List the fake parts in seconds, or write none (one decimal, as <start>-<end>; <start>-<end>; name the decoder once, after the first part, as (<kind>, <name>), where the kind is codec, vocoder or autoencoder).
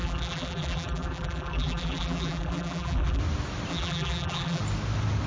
0.0-3.2 (vocoder, BigVGAN v2); 3.7-4.6